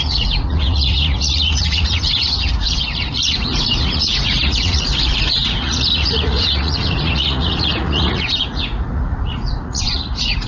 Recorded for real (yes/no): no